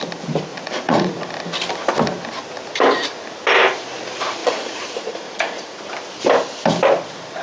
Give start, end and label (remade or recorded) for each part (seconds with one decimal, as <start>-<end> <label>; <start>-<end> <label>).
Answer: 0.0-0.5 recorded; 0.5-1.3 remade; 1.3-4.4 recorded; 4.4-5.8 remade; 5.8-7.4 recorded